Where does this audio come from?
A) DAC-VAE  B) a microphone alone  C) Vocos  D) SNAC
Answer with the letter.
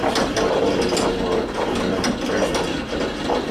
B